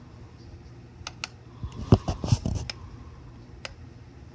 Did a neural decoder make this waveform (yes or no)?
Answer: no